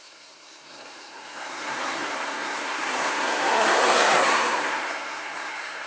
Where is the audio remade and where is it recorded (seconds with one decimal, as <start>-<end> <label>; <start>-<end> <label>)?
0.0-5.9 remade